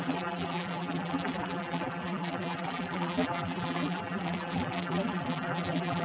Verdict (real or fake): fake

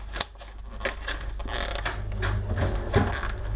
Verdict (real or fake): real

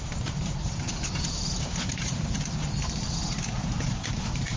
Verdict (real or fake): fake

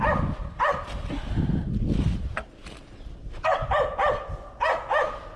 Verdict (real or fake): real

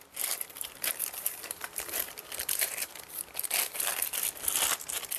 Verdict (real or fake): fake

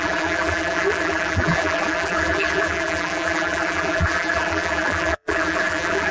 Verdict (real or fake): fake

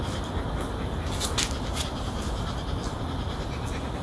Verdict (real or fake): real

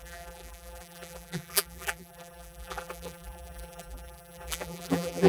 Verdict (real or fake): fake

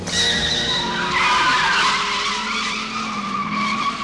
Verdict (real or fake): real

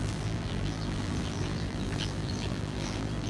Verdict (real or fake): fake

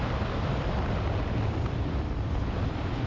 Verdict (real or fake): fake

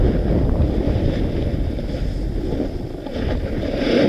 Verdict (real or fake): real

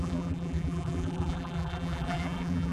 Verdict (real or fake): fake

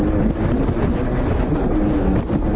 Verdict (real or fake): real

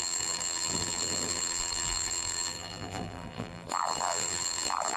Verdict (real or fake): fake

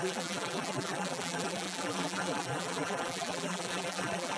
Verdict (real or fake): fake